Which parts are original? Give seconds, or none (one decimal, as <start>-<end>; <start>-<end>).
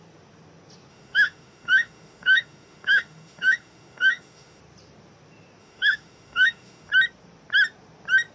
0.0-0.9; 4.6-5.6; 6.9-8.3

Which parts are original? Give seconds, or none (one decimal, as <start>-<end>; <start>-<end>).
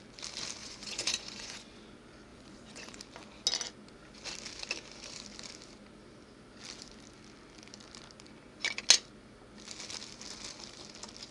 0.0-0.6; 1.9-2.3; 3.0-11.3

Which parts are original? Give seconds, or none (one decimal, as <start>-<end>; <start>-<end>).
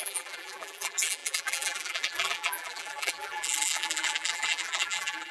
none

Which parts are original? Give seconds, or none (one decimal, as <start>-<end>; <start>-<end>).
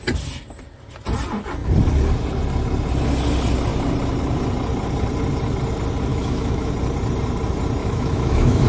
0.0-6.1; 6.7-7.8